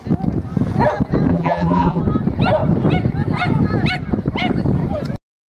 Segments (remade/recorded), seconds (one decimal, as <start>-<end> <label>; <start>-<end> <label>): 0.0-1.3 recorded; 1.3-2.0 remade; 2.0-5.5 recorded